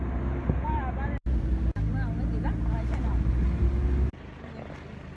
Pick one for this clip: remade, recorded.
recorded